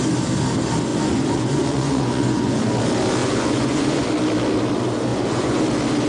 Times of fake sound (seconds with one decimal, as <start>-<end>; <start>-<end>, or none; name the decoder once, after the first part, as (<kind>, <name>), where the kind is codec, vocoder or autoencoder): 0.9-2.6 (vocoder, Vocos); 3.2-4.1; 5.1-5.6